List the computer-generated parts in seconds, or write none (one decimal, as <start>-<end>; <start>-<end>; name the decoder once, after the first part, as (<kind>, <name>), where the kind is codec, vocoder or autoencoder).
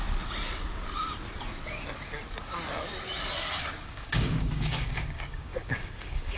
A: 3.8-6.4 (codec, DAC)